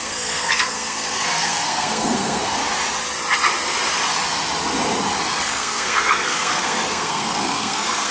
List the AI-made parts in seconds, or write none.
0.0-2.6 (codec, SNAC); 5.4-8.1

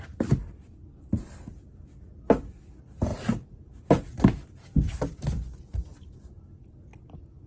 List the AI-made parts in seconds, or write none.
none